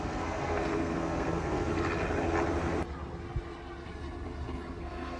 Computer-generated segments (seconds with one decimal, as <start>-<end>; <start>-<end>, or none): 0.0-1.7; 4.8-5.2